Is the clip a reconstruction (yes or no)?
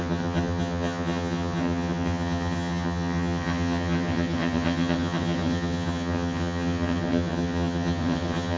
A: yes